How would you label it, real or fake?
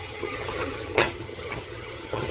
fake